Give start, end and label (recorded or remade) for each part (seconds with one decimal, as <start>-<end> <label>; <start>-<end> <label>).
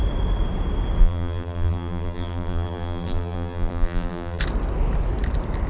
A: 0.0-1.0 recorded; 1.0-4.4 remade; 4.4-5.7 recorded